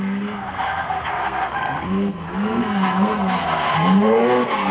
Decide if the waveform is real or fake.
fake